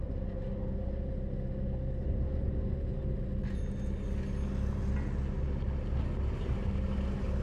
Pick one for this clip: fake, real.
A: real